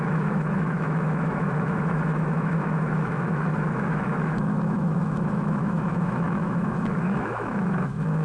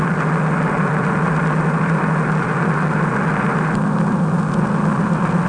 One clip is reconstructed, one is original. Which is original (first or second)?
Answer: second